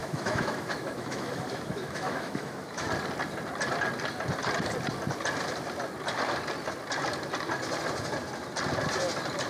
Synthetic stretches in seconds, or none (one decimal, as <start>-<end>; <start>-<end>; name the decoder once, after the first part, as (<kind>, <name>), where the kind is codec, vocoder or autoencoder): 0.0-2.9 (autoencoder, DAC-VAE)